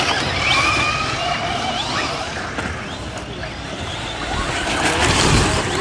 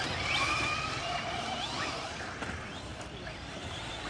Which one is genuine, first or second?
first